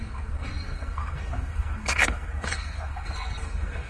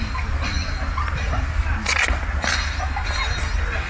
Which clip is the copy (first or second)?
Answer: first